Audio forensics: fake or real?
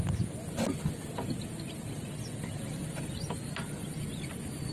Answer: real